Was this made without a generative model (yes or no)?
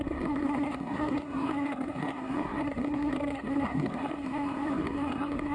no